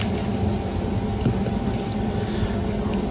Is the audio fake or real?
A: real